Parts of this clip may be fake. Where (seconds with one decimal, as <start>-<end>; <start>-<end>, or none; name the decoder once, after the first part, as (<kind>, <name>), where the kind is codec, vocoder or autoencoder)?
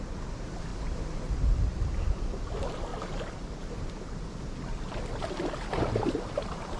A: 0.7-1.2 (vocoder, BigVGAN v2)